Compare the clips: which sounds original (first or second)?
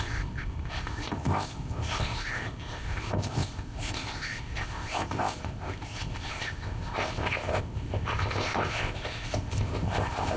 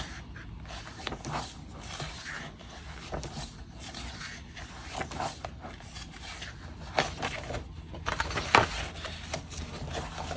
second